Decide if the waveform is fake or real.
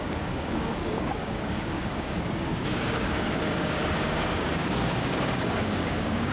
fake